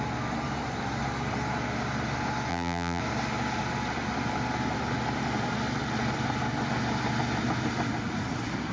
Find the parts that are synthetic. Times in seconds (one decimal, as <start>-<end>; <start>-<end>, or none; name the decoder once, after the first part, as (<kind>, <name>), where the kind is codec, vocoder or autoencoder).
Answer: 2.5-3.0 (vocoder, BigVGAN v2)